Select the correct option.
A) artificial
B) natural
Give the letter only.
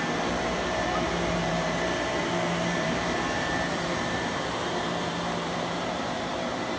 A